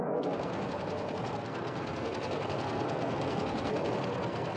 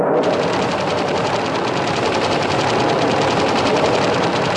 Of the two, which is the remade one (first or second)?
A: first